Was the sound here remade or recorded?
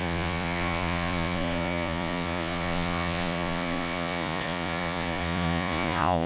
remade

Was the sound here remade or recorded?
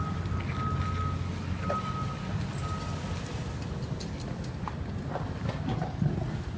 recorded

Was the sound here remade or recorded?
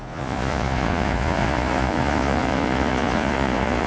remade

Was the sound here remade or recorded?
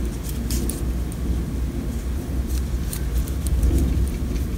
recorded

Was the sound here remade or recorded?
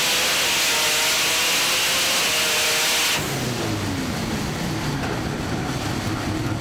recorded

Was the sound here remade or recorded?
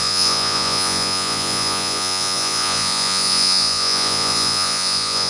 remade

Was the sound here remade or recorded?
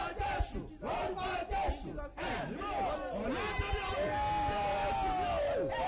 recorded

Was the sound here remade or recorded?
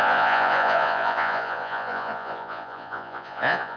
remade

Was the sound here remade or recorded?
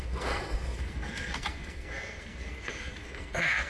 remade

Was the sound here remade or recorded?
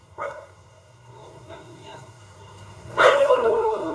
remade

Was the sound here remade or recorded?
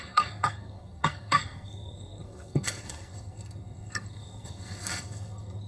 remade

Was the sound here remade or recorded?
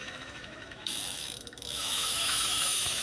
remade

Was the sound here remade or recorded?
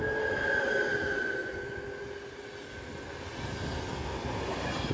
recorded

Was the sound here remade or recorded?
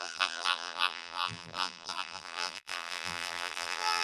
remade